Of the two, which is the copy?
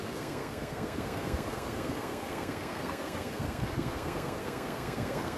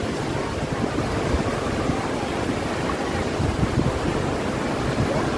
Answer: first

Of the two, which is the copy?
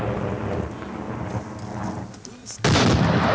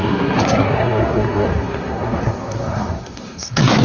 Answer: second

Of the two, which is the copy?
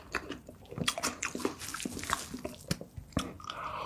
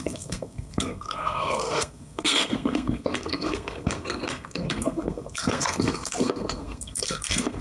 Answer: second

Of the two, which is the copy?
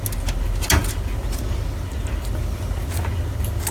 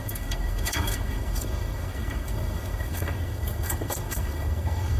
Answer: second